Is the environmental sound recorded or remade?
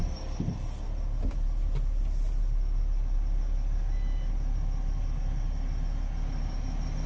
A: recorded